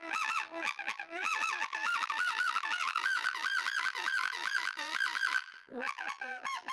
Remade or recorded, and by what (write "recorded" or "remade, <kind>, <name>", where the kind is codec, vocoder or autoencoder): remade, vocoder, BigVGAN v2